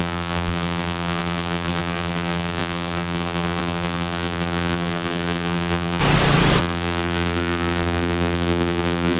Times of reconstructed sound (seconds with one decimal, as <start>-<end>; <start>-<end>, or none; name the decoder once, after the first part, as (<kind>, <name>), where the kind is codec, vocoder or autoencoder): 0.0-6.0 (vocoder, BigVGAN v2); 6.6-9.2